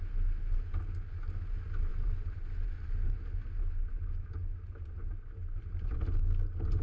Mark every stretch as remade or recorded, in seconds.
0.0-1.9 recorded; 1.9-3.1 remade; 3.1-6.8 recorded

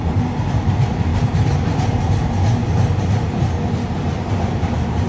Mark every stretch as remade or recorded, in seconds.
0.0-1.1 recorded; 1.1-3.4 remade; 3.4-5.1 recorded

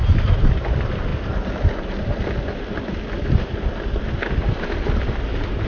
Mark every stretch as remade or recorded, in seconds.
0.0-0.6 remade; 0.6-5.7 recorded

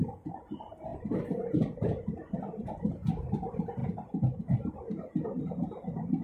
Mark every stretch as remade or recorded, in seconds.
0.0-0.9 recorded; 0.9-2.9 remade; 2.9-3.8 recorded; 3.8-5.4 remade; 5.4-6.2 recorded

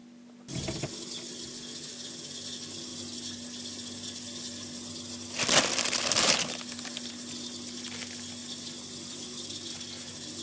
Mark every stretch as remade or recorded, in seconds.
0.0-2.9 recorded; 2.9-7.1 remade; 7.1-10.4 recorded

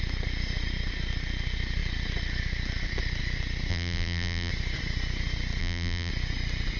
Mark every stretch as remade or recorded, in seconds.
0.0-3.7 recorded; 3.7-4.5 remade; 4.5-5.6 recorded; 5.6-6.1 remade; 6.1-6.8 recorded

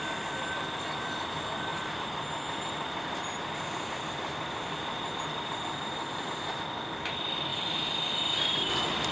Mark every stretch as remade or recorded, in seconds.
0.0-1.7 recorded; 1.7-6.6 remade; 6.6-7.5 recorded; 7.5-8.7 remade; 8.7-9.1 recorded

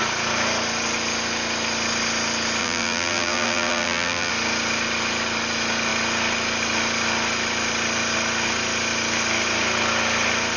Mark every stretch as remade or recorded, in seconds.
0.0-2.6 recorded; 2.6-4.3 remade; 4.3-10.6 recorded